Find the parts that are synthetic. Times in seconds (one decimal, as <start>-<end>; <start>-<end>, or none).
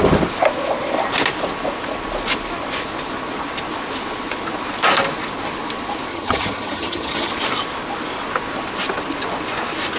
6.1-7.3